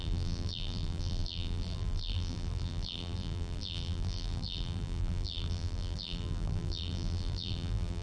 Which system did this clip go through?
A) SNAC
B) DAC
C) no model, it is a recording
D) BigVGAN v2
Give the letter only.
D